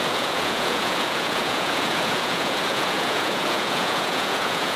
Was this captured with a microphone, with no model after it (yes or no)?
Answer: no